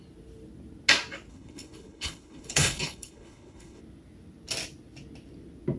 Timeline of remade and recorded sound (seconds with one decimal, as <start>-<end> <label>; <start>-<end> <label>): 0.0-1.3 recorded; 1.3-3.8 remade; 3.8-5.8 recorded